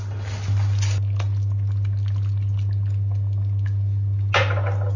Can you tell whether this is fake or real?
real